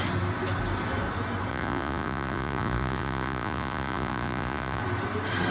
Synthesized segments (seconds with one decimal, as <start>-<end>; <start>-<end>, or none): 1.5-4.8